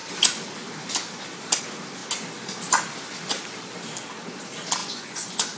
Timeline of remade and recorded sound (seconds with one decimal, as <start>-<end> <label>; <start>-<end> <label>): 0.0-4.8 recorded; 4.8-5.6 remade